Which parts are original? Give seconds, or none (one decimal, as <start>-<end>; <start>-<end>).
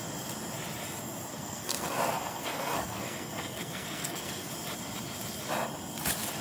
0.0-1.3; 4.5-6.4